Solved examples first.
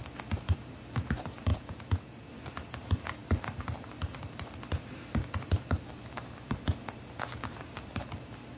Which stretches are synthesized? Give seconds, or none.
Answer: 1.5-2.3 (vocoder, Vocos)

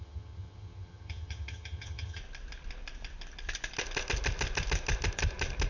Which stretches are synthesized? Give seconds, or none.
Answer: 0.0-2.2 (vocoder, HiFi-GAN)

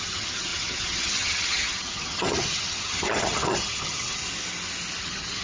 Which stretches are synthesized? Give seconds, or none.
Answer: 0.0-4.2 (vocoder, HiFi-GAN); 5.0-5.4

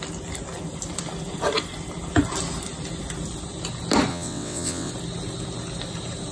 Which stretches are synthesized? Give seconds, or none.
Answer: 4.1-4.9 (vocoder, WaveNeXt)

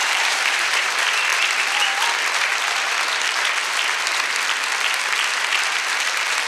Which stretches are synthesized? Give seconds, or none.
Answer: 0.0-0.9 (vocoder, BigVGAN v2)

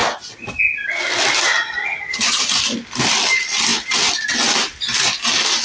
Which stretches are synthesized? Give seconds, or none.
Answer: 1.8-2.4 (vocoder, HiFi-GAN)

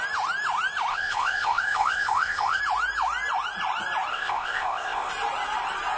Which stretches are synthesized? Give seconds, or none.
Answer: 0.9-2.6 (codec, ZipCodec); 4.1-5.1